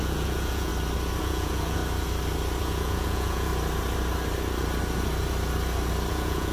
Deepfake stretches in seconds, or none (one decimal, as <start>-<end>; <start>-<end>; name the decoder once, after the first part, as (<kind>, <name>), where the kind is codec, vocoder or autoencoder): 0.0-0.7 (vocoder, Vocos); 1.2-1.8; 2.6-3.5; 6.1-6.5